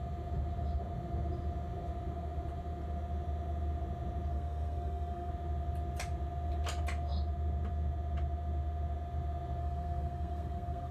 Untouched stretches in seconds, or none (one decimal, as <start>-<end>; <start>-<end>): 0.0-4.3; 5.3-9.6

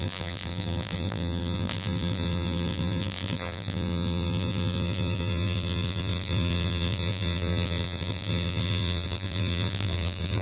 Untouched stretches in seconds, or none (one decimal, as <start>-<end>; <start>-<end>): none

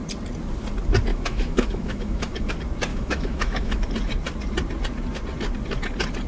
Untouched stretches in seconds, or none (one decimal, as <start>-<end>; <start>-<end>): 0.0-1.1; 2.5-2.9; 3.9-6.3

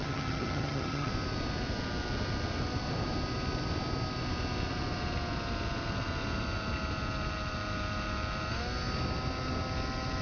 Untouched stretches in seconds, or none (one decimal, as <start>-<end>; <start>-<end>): 1.1-10.2